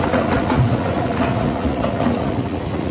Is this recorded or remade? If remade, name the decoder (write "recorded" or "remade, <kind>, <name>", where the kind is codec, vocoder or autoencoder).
remade, vocoder, Vocos